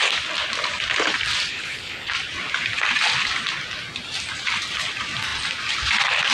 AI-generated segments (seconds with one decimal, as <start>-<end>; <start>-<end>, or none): 1.5-2.1